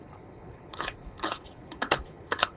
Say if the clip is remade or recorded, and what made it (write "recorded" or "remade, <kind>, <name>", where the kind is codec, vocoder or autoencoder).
remade, codec, HILCodec